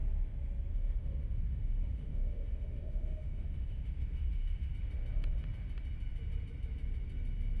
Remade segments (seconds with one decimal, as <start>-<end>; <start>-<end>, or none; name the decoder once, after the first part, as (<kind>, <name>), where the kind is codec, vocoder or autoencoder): 0.7-4.7 (autoencoder, DAC-VAE)